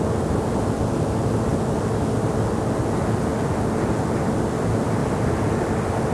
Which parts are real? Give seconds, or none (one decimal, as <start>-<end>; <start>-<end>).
0.0-6.1